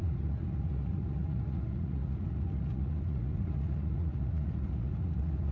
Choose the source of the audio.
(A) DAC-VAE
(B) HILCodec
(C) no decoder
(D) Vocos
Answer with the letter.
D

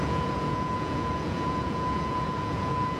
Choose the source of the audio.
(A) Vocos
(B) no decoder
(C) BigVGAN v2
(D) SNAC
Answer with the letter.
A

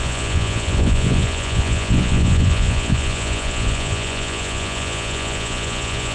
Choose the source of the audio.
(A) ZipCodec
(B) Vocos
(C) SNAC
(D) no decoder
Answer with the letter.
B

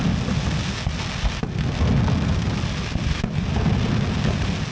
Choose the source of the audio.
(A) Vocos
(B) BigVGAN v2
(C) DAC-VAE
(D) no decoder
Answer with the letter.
D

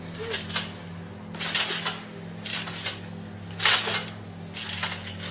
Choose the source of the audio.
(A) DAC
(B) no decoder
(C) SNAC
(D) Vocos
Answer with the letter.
B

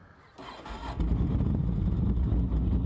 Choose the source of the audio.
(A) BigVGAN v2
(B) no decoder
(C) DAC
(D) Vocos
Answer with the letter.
B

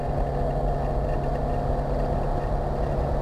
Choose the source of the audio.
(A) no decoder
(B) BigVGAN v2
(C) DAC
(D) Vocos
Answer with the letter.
A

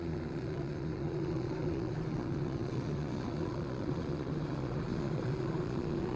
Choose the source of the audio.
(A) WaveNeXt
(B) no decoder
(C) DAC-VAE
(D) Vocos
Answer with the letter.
D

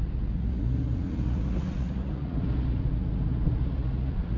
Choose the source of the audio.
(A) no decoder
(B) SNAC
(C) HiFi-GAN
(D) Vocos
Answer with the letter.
D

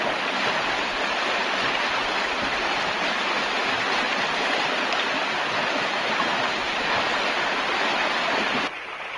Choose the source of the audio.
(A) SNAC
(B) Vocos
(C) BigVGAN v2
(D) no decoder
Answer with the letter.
D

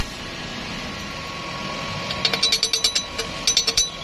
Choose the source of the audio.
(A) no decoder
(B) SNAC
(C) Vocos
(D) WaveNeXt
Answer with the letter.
A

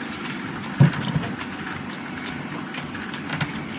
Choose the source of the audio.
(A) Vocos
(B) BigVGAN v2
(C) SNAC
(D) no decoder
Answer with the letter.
D